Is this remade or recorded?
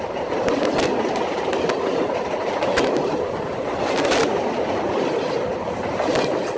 recorded